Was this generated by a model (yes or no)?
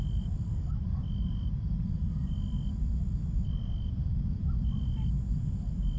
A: no